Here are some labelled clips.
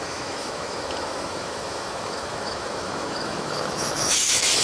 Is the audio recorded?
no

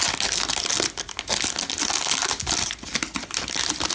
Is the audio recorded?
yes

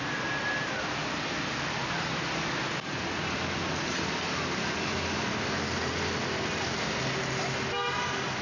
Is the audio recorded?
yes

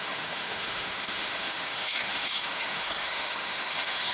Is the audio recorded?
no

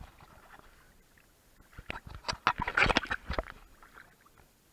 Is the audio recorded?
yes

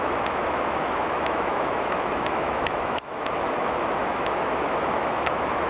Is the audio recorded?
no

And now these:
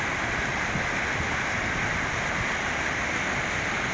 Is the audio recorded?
yes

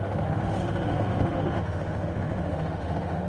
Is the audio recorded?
no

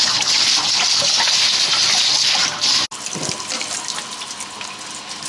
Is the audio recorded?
yes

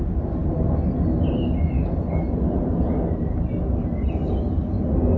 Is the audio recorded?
yes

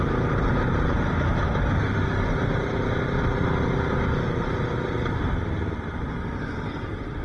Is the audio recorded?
yes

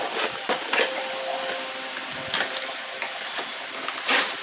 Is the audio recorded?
yes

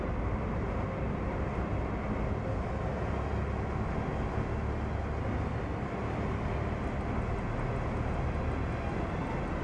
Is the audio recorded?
yes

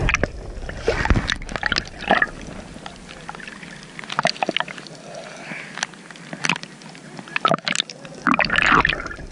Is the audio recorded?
yes